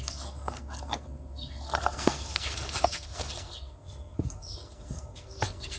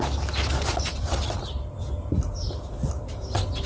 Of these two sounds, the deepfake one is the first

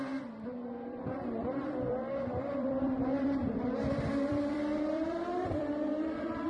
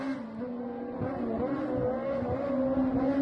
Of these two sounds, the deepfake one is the first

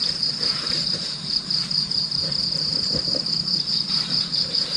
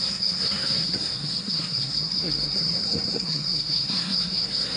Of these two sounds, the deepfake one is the second